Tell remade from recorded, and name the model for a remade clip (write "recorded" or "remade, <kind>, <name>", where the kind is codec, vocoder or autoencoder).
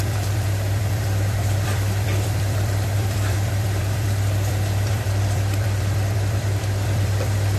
remade, vocoder, BigVGAN v2